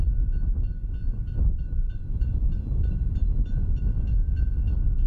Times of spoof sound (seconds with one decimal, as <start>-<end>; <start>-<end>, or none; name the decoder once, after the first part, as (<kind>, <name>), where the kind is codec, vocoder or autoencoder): 1.0-4.1 (vocoder, BigVGAN v2)